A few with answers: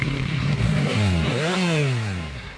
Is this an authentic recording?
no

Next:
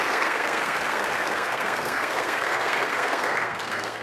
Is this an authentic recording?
no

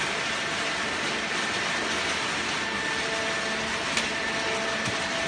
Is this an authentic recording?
yes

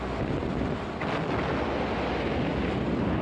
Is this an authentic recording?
yes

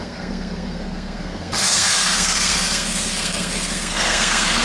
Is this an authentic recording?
no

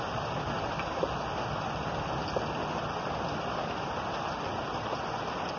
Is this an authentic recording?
yes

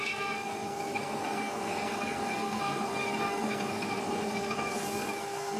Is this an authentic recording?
no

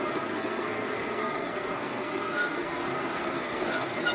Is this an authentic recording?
no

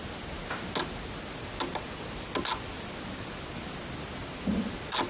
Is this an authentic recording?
yes